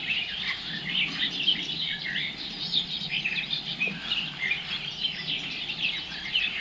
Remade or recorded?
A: recorded